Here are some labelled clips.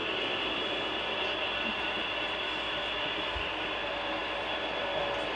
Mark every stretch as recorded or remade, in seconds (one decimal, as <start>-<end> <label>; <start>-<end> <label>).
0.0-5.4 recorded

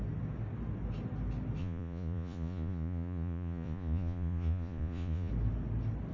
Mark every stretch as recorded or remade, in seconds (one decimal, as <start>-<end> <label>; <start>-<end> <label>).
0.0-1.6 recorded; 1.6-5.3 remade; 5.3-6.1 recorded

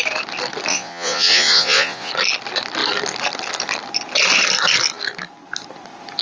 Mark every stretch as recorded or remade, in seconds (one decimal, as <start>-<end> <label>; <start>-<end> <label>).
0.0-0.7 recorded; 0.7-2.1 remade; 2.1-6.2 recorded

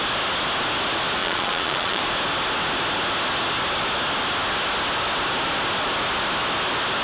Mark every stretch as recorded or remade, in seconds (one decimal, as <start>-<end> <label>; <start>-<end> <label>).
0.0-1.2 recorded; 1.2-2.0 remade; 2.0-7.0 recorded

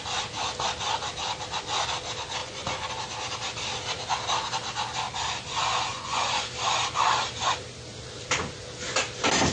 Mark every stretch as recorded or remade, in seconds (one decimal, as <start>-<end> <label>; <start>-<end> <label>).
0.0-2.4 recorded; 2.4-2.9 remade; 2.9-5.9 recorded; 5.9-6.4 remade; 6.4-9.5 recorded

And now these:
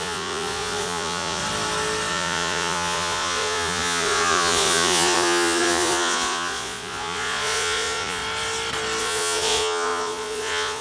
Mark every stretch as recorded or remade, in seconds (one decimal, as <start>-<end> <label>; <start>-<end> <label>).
0.0-1.4 remade; 1.4-2.1 recorded; 2.1-8.2 remade; 8.2-9.0 recorded; 9.0-10.8 remade

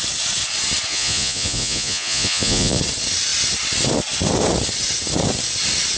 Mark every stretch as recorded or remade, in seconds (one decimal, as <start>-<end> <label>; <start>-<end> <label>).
0.0-0.9 recorded; 0.9-2.8 remade; 2.8-6.0 recorded

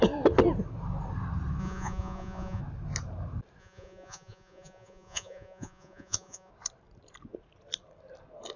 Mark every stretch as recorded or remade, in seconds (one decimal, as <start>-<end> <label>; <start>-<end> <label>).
0.0-1.6 recorded; 1.6-2.6 remade; 2.6-3.6 recorded; 3.6-6.5 remade; 6.5-8.6 recorded